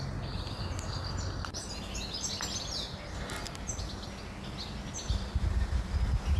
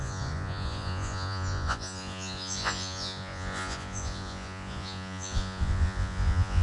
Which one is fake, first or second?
second